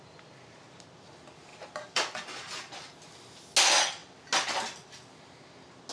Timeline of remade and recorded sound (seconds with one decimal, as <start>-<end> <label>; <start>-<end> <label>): 0.0-1.5 recorded; 1.5-2.6 remade; 2.6-5.9 recorded